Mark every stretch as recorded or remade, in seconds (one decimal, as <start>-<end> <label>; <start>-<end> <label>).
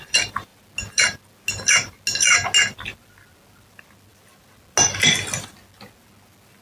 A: 0.0-6.6 recorded